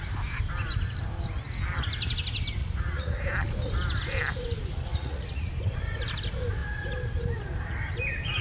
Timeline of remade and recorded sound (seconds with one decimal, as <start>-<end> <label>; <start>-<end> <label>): 0.0-2.6 recorded; 2.6-3.2 remade; 3.2-4.9 recorded; 4.9-5.5 remade; 5.5-8.4 recorded